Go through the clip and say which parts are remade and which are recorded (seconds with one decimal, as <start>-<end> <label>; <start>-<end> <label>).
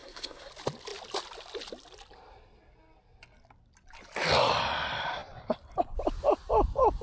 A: 0.0-0.5 remade; 0.5-7.0 recorded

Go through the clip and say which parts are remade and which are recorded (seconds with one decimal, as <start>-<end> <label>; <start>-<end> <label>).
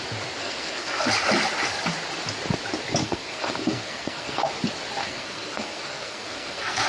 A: 0.0-0.4 recorded; 0.4-1.1 remade; 1.1-3.0 recorded; 3.0-4.5 remade; 4.5-5.0 recorded; 5.0-6.9 remade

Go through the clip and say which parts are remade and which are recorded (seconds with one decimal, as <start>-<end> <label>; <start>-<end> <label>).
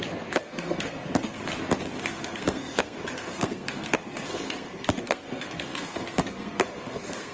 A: 0.0-1.4 remade; 1.4-2.0 recorded; 2.0-7.3 remade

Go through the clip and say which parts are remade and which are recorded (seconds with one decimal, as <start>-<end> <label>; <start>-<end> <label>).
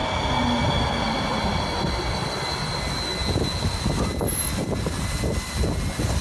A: 0.0-6.2 recorded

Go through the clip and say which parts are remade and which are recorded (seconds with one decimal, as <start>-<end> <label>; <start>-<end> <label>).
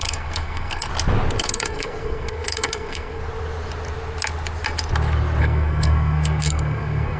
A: 0.0-0.9 remade; 0.9-1.4 recorded; 1.4-3.2 remade; 3.2-5.4 recorded; 5.4-7.2 remade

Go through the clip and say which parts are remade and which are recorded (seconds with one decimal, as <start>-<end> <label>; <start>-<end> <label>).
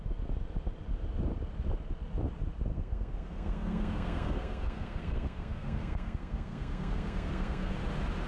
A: 0.0-2.7 recorded; 2.7-7.7 remade; 7.7-8.3 recorded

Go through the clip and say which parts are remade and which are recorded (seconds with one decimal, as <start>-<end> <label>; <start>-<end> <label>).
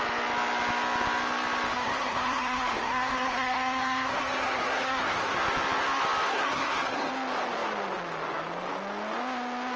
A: 0.0-1.7 recorded; 1.7-5.4 remade; 5.4-6.3 recorded; 6.3-7.1 remade; 7.1-9.8 recorded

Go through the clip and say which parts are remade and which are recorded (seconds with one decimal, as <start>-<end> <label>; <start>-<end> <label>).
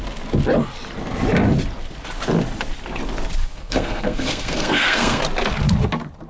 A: 0.0-3.4 recorded; 3.4-5.2 remade; 5.2-6.3 recorded